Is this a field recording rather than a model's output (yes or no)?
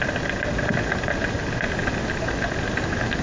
yes